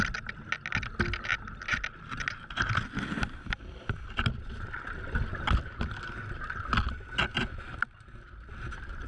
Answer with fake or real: real